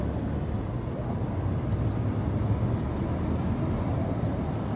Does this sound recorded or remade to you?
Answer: recorded